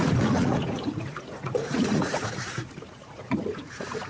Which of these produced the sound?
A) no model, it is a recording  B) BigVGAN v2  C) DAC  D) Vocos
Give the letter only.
D